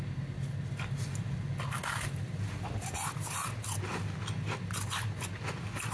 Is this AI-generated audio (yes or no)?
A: no